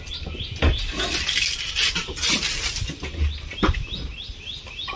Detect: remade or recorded recorded